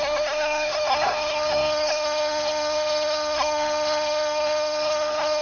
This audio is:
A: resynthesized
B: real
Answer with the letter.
A